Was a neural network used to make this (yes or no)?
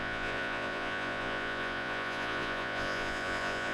yes